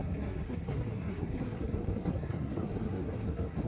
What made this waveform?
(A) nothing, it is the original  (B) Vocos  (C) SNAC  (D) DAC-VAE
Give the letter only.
C